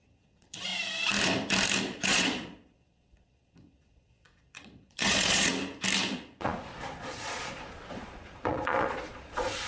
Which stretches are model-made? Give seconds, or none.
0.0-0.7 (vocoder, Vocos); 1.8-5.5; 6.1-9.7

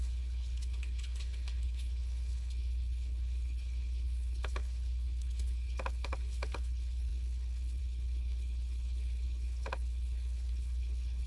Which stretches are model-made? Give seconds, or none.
0.0-11.3 (codec, HILCodec)

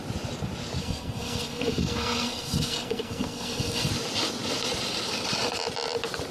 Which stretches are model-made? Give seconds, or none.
0.8-3.9 (codec, SNAC)

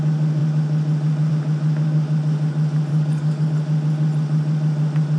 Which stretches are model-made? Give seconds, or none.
2.9-3.5 (codec, DAC)

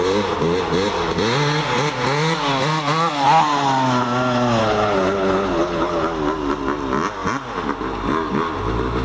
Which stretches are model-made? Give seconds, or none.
4.6-6.0 (codec, HILCodec)